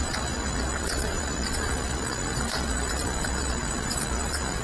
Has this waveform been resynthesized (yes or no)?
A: yes